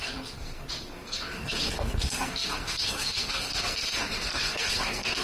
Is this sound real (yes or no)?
no